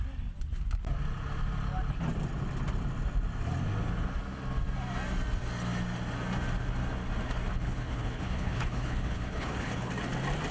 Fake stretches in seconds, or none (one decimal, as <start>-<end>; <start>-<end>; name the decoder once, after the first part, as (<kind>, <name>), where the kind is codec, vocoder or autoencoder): 7.5-9.9 (codec, HILCodec)